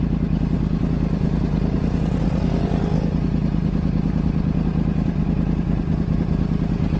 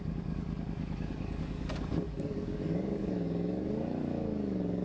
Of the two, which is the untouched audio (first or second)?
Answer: first